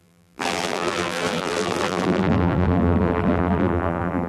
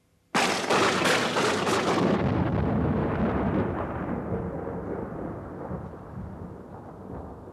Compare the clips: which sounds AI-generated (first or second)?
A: first